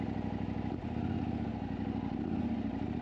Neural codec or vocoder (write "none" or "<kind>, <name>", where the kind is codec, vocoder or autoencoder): none